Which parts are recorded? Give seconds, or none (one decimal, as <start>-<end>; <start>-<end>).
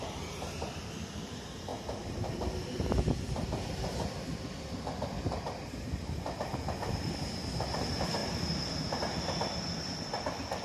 none